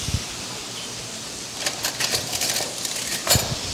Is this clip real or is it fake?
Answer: real